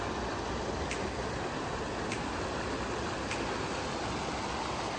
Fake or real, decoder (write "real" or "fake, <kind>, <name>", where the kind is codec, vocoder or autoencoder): real